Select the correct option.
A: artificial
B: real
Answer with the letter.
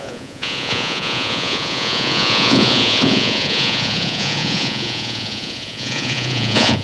A